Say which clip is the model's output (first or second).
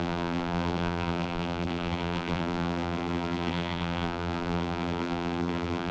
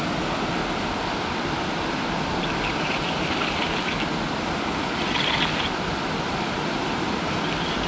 first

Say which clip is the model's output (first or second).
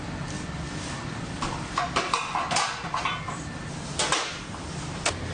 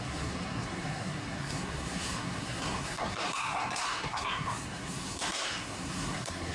second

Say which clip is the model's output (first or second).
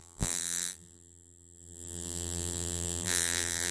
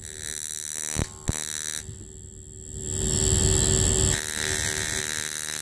first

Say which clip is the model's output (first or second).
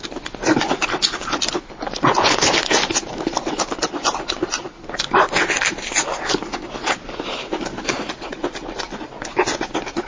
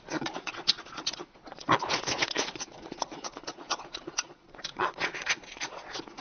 second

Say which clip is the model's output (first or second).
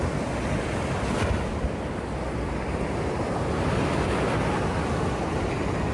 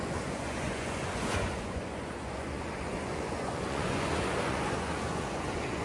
second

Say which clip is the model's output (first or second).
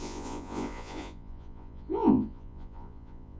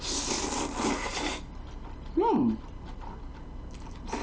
first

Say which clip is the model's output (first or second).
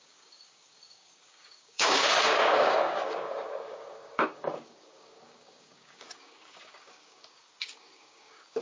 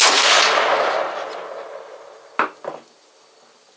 first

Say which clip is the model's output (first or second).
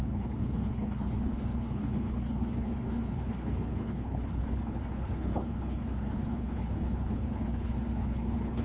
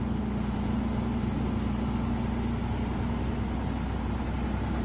first